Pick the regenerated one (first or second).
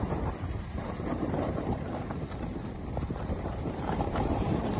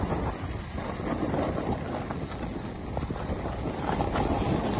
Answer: first